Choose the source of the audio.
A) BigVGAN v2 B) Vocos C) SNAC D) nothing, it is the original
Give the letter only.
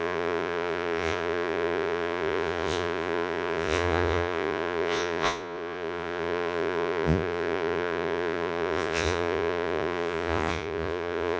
B